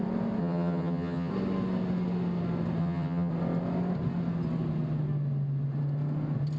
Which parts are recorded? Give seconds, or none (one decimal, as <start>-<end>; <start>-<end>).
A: 0.0-0.4; 1.3-2.8; 3.3-6.6